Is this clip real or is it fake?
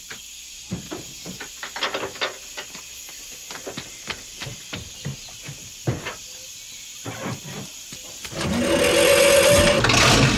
real